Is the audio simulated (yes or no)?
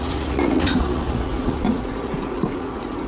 yes